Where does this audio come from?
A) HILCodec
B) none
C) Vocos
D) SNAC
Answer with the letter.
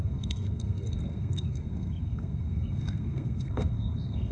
D